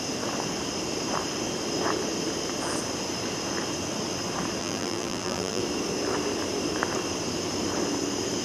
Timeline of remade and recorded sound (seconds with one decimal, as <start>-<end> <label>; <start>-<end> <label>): 0.0-4.6 recorded; 4.6-5.6 remade; 5.6-8.4 recorded